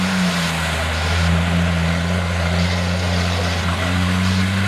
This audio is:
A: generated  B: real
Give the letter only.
B